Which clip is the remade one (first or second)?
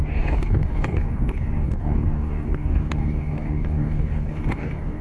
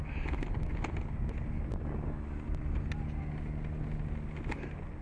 first